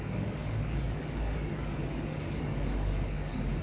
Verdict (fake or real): fake